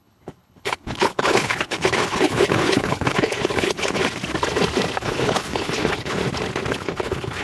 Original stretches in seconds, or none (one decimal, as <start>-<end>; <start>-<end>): 4.0-5.0; 6.2-6.7